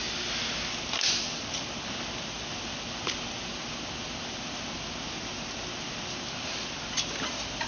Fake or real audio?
real